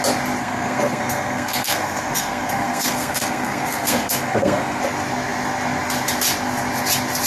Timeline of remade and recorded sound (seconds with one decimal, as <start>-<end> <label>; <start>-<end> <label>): 0.0-0.4 recorded; 0.4-4.8 remade; 4.8-7.3 recorded